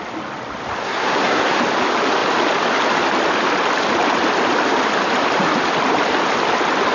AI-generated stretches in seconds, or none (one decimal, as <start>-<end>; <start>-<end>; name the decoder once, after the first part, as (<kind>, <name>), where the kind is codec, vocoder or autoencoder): 0.8-1.6 (codec, SNAC)